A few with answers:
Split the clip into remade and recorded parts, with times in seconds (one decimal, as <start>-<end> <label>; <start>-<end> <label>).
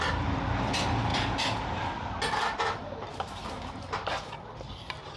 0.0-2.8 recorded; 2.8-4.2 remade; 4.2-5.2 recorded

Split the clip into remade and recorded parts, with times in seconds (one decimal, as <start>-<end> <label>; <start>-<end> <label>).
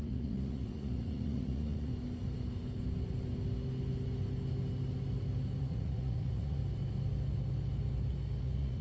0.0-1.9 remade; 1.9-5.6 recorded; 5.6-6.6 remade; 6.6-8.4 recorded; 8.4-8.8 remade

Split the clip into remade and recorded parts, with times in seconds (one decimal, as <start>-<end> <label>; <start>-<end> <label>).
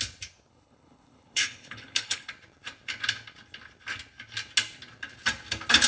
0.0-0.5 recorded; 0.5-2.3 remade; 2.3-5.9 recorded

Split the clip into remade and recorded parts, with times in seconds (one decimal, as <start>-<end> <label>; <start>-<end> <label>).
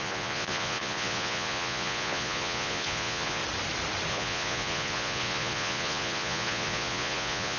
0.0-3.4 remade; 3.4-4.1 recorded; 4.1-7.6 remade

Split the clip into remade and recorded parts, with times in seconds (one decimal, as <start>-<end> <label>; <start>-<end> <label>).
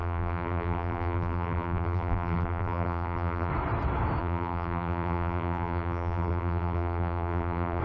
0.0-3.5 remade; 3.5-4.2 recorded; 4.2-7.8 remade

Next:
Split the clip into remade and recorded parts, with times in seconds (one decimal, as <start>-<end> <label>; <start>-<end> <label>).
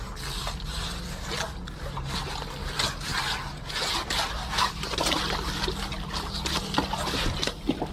0.0-7.9 recorded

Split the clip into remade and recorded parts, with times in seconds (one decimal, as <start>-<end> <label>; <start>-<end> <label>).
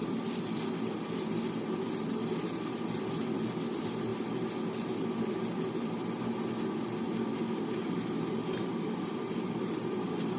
0.0-10.4 recorded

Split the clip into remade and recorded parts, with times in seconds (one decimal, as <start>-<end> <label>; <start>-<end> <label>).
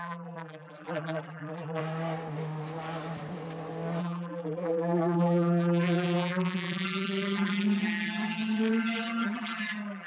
0.0-1.8 remade; 1.8-4.0 recorded; 4.0-10.1 remade